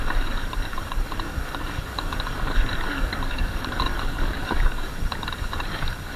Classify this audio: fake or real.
fake